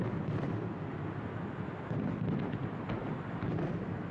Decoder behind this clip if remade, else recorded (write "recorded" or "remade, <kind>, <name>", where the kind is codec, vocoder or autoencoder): recorded